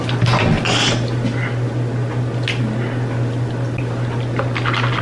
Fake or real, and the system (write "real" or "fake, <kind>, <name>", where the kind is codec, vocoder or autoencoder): real